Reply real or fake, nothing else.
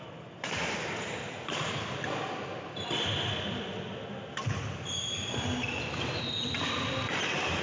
real